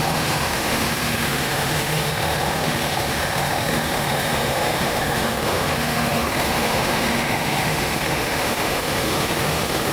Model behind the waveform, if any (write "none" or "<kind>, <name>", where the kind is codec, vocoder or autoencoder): autoencoder, DAC-VAE